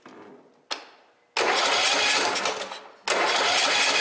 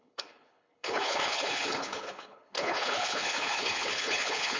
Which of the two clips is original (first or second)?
first